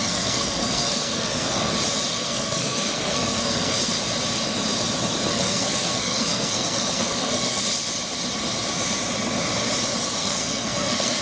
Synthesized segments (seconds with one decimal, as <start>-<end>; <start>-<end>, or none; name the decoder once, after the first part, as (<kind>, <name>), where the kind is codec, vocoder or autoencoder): 0.0-1.7 (codec, SNAC); 2.1-4.0; 5.3-7.7; 10.2-11.2